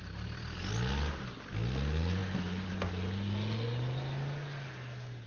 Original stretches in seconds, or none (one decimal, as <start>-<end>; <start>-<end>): 0.0-5.3